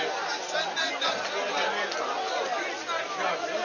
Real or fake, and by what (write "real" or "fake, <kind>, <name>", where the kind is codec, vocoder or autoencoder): real